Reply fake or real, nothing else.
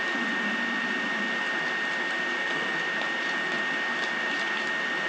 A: real